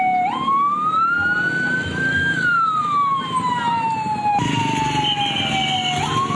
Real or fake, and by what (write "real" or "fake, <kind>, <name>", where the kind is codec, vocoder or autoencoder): real